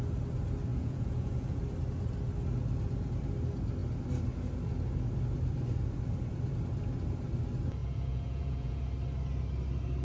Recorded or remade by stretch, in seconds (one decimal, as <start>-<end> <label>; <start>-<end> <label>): 0.0-0.7 recorded; 0.7-1.6 remade; 1.6-7.8 recorded; 7.8-8.8 remade; 8.8-10.0 recorded